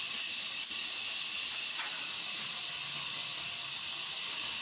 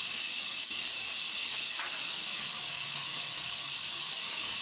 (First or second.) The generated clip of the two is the second